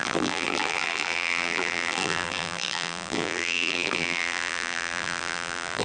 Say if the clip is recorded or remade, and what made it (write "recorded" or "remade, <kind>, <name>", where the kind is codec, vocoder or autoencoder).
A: remade, vocoder, BigVGAN v2